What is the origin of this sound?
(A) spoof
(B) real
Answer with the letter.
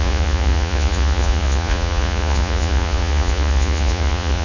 A